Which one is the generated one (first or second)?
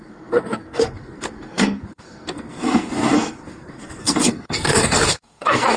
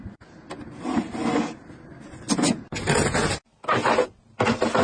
first